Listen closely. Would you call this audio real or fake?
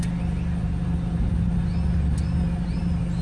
real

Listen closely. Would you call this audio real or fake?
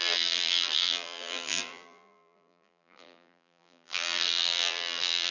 fake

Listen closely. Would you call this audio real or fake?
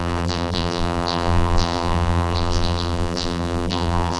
fake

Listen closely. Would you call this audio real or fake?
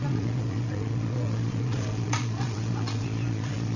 fake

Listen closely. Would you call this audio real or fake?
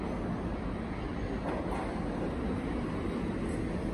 real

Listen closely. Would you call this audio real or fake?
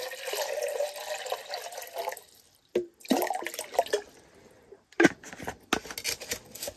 real